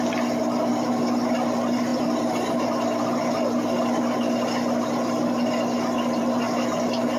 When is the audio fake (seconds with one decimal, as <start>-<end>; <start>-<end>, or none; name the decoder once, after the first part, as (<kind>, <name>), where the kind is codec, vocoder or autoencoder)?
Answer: none